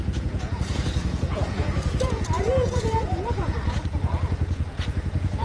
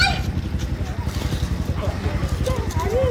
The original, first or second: second